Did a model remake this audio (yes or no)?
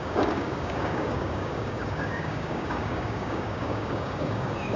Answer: yes